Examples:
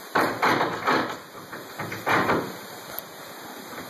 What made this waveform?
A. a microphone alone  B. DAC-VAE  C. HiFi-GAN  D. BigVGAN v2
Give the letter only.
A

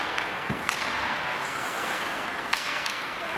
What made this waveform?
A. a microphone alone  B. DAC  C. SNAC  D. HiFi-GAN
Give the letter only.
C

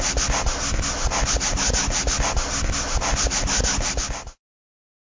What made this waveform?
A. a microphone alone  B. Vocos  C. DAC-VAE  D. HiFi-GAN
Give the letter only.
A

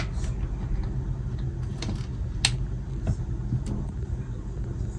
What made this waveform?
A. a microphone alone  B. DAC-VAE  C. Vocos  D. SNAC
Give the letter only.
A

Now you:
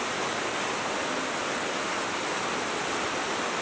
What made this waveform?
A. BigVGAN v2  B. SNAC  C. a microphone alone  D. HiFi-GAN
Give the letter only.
A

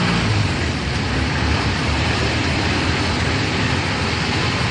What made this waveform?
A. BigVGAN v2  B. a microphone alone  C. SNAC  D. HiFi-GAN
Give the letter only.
A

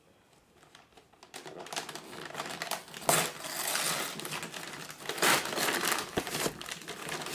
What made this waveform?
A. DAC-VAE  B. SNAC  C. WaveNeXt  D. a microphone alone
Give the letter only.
D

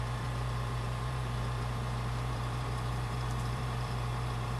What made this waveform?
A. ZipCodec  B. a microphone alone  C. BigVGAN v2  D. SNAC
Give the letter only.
C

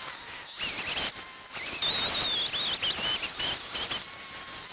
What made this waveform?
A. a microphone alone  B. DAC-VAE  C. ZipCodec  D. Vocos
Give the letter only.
A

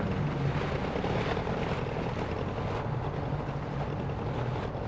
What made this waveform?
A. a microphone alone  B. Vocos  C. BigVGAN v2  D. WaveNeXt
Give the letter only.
A